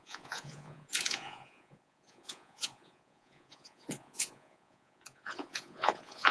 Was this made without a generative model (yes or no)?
no